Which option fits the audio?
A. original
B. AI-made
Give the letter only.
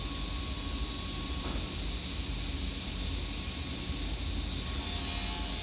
A